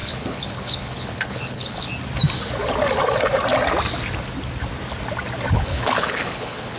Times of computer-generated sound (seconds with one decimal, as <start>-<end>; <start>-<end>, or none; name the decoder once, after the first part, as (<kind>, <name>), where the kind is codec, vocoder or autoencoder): 0.0-1.9 (codec, HILCodec); 5.5-6.8